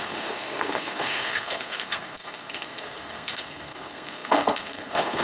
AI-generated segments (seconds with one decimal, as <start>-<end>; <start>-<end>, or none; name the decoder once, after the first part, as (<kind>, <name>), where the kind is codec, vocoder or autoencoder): 0.0-5.2 (codec, SNAC)